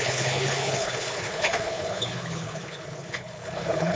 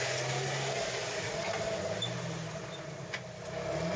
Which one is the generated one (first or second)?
first